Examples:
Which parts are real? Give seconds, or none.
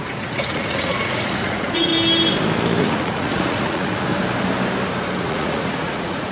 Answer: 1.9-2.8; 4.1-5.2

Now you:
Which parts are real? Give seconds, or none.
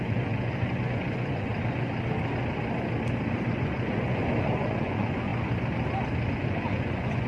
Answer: 1.5-3.5; 5.3-6.4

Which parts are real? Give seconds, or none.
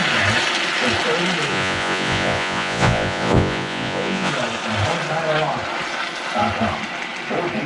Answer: 0.0-1.5; 4.3-7.7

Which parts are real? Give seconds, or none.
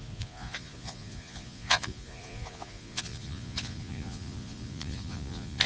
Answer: none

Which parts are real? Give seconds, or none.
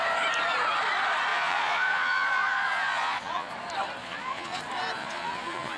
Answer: 0.0-1.3; 3.5-4.0; 4.6-5.0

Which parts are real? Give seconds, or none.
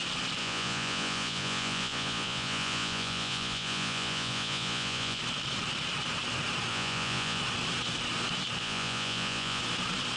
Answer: 0.0-0.4; 5.2-6.7; 7.4-8.6; 9.6-10.2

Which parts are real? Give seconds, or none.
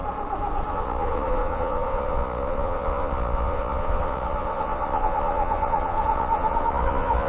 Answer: 0.0-0.7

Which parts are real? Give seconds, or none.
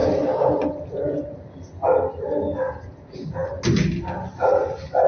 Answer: 0.0-5.1